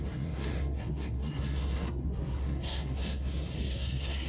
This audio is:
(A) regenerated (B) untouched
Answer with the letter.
A